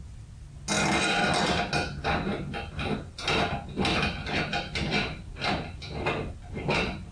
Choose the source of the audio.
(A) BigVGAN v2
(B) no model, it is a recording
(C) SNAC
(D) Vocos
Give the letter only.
B